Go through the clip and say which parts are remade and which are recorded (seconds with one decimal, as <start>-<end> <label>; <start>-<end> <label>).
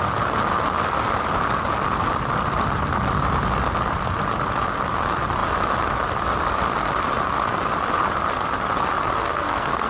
0.0-9.2 recorded; 9.2-9.9 remade